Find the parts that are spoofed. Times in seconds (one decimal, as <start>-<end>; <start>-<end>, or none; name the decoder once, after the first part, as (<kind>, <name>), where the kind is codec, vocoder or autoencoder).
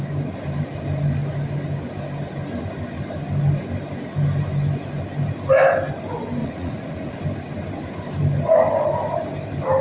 6.4-7.2 (vocoder, Vocos)